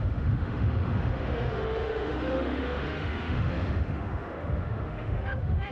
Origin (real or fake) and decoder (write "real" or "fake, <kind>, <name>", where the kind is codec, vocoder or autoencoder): fake, autoencoder, DAC-VAE